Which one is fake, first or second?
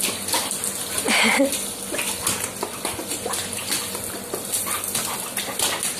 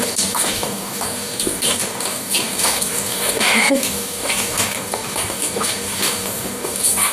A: second